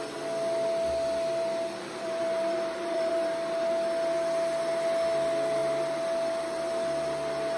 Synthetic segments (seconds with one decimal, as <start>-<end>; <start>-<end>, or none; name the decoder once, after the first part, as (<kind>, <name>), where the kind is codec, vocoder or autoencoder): 1.8-3.1 (vocoder, BigVGAN v2)